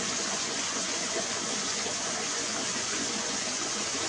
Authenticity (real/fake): fake